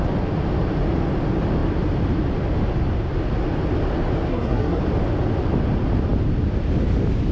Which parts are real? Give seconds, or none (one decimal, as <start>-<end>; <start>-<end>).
0.0-4.3; 4.8-7.3